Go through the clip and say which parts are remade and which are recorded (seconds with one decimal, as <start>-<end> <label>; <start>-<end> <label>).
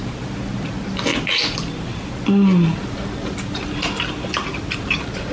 0.0-5.3 recorded